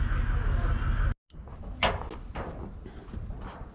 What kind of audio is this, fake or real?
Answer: real